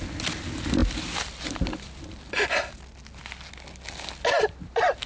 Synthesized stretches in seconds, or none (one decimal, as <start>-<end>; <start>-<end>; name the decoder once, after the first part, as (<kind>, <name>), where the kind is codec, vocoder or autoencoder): none